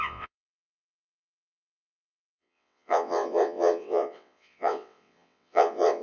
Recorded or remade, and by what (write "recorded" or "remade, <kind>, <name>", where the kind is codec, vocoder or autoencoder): remade, vocoder, WaveNeXt